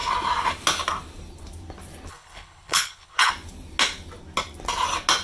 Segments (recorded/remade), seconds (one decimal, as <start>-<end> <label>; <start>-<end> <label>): 0.0-2.1 recorded; 2.1-3.3 remade; 3.3-5.2 recorded